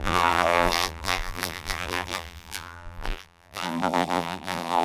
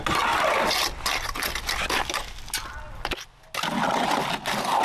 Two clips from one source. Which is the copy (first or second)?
first